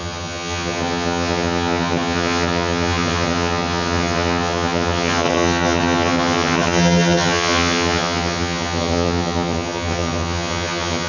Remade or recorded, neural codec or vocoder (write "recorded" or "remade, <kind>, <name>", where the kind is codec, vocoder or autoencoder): remade, vocoder, HiFi-GAN